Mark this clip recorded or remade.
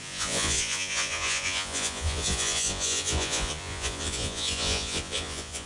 remade